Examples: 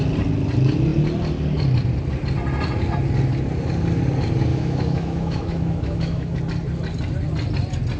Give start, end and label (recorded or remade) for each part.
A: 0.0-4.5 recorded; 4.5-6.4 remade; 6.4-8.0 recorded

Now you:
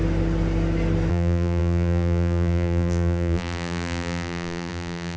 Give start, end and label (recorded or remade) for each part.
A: 0.0-1.1 recorded; 1.1-5.2 remade

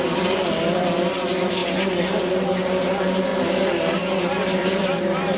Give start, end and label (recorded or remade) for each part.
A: 0.0-5.4 recorded

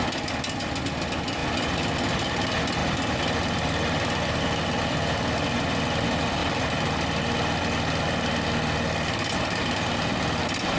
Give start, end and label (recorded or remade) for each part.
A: 0.0-1.4 recorded; 1.4-2.3 remade; 2.3-2.8 recorded; 2.8-5.4 remade; 5.4-10.8 recorded

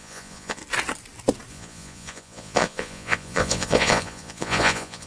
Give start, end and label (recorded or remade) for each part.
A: 0.0-0.6 remade; 0.6-1.5 recorded; 1.5-5.1 remade